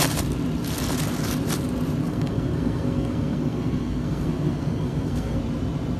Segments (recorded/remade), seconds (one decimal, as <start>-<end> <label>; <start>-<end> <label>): 0.0-2.0 recorded; 2.0-5.4 remade; 5.4-6.0 recorded